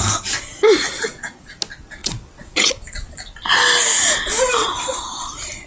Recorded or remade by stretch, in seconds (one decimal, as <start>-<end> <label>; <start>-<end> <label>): 0.0-2.0 recorded; 2.0-2.7 remade; 2.7-5.7 recorded